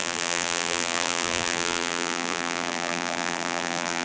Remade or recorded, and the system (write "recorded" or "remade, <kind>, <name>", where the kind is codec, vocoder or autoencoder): remade, vocoder, BigVGAN v2